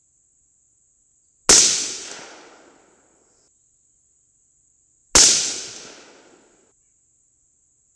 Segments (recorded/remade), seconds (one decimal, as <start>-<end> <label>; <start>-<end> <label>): 0.0-8.0 recorded